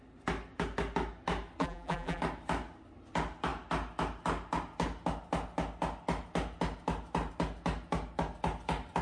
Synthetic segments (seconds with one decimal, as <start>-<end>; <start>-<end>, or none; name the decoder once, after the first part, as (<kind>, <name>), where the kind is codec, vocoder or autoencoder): 1.6-2.2 (vocoder, BigVGAN v2)